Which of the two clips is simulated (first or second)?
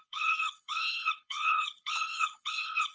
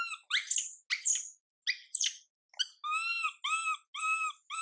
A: first